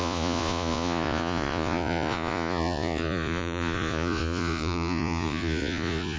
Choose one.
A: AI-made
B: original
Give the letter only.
A